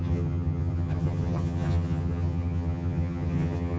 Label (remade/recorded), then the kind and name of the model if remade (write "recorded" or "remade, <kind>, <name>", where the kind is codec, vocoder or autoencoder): remade, vocoder, HiFi-GAN